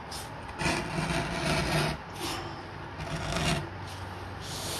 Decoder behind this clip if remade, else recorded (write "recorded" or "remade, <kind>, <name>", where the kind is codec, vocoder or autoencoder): recorded